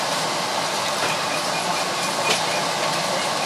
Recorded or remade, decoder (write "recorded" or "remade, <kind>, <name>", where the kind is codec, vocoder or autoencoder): remade, vocoder, BigVGAN v2